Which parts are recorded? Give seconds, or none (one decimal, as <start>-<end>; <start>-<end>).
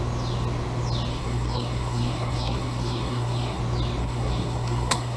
0.0-1.1; 3.6-4.0